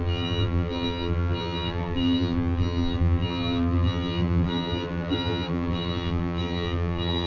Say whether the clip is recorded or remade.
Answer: remade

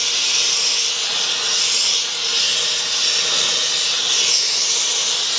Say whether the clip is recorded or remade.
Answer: recorded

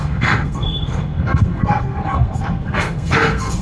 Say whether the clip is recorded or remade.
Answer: remade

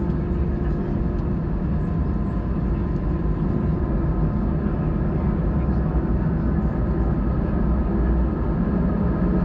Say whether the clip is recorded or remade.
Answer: recorded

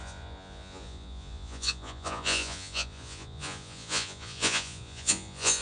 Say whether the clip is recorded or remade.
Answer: remade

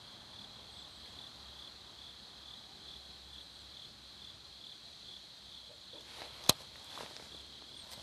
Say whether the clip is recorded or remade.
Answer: recorded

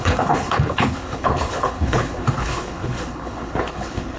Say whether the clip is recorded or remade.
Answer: remade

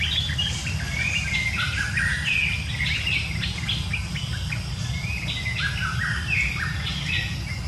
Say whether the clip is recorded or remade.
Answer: recorded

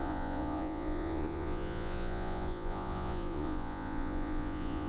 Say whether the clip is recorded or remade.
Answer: remade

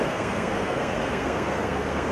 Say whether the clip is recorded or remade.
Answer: remade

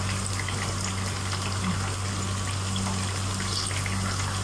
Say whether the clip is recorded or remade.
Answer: recorded